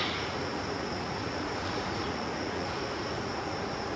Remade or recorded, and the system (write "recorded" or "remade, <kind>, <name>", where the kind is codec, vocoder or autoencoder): remade, vocoder, Vocos